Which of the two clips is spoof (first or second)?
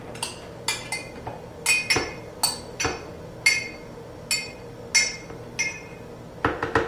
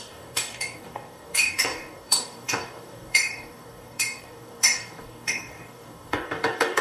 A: second